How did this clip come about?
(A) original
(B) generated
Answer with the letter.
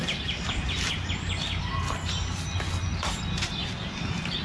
A